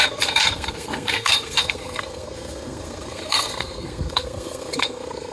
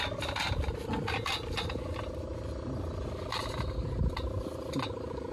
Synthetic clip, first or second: first